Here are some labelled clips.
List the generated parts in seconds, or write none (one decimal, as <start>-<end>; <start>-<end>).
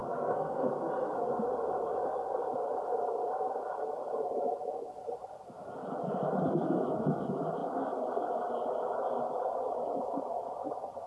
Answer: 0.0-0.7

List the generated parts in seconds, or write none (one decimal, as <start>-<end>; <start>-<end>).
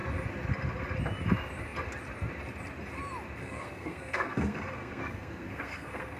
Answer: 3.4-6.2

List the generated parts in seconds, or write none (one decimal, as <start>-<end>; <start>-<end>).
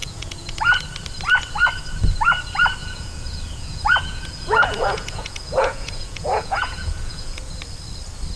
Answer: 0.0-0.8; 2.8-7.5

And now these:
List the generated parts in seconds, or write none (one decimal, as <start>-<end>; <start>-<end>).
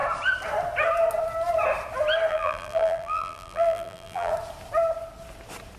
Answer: 2.3-4.3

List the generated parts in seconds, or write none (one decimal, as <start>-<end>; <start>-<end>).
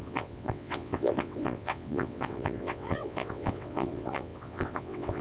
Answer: 0.0-5.2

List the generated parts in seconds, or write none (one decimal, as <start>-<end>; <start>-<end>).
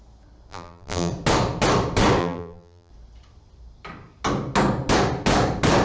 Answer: 0.5-1.1; 2.2-2.9